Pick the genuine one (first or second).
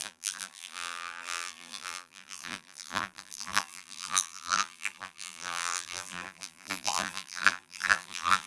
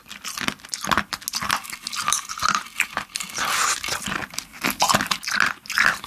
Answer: second